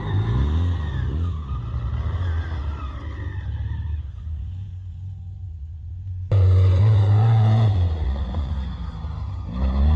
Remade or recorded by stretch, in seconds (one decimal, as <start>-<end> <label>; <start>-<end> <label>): 0.0-3.9 recorded; 3.9-8.5 remade; 8.5-10.0 recorded